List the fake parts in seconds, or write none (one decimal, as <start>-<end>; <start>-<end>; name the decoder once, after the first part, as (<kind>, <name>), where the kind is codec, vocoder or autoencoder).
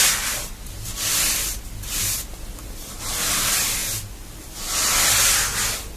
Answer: none